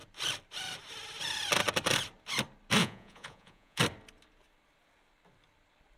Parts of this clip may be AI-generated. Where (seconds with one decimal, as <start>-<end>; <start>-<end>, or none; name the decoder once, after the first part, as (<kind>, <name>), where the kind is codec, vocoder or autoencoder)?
2.8-3.8 (vocoder, Vocos)